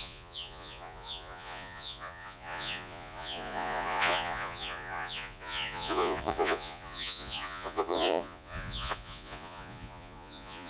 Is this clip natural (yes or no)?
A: no